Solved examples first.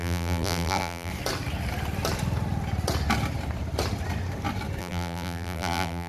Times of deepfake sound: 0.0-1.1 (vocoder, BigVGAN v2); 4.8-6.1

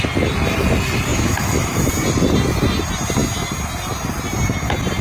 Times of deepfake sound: 1.1-1.9 (autoencoder, DAC-VAE)

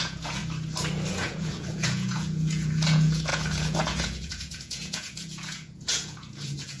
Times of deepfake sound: 0.0-0.4 (vocoder, Vocos); 1.1-6.8